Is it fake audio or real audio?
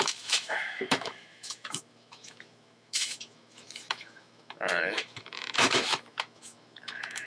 fake